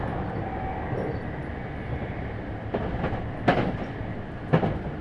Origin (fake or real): real